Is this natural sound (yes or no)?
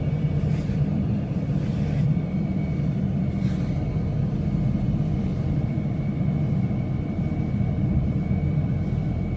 no